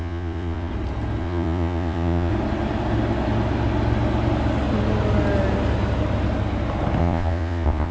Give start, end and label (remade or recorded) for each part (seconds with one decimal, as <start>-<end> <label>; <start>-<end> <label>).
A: 0.0-0.7 remade; 0.7-1.2 recorded; 1.2-2.3 remade; 2.3-7.0 recorded; 7.0-7.9 remade